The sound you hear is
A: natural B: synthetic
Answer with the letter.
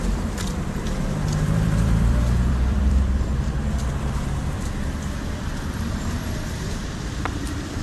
B